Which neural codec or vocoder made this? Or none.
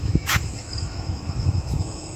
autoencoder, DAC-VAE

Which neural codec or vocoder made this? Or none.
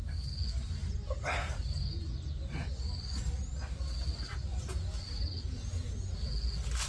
none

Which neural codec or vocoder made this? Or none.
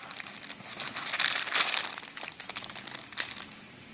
none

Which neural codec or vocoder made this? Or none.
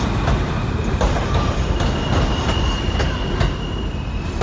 none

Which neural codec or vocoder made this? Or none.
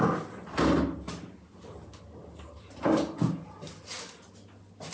none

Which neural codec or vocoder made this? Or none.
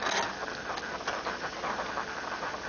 none